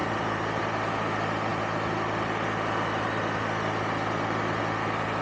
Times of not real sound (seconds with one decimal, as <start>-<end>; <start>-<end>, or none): 0.0-0.6